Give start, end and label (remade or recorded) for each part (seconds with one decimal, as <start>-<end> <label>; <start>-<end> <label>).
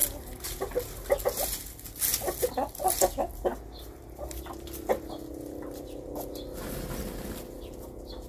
0.0-8.3 recorded